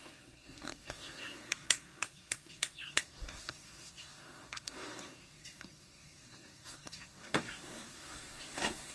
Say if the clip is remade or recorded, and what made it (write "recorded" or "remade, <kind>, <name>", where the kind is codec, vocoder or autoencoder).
remade, codec, SNAC